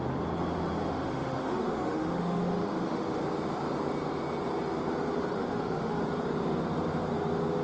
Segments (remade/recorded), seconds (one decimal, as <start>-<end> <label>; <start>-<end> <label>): 0.0-0.9 recorded; 0.9-3.2 remade; 3.2-5.3 recorded; 5.3-6.0 remade; 6.0-7.6 recorded